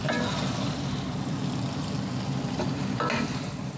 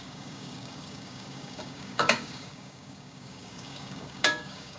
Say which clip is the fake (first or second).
second